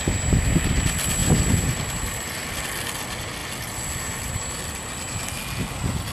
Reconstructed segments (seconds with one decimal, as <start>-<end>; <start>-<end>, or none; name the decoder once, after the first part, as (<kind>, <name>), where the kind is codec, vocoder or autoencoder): none